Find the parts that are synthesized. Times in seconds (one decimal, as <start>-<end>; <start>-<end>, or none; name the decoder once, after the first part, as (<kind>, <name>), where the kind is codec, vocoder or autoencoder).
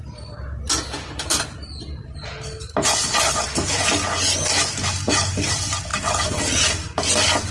none